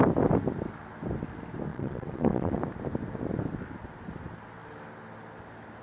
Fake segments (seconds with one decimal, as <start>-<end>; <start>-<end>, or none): 1.7-2.6